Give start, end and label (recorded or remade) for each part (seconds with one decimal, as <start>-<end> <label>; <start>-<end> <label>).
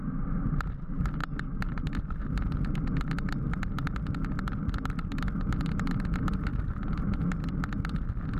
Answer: 0.0-8.4 recorded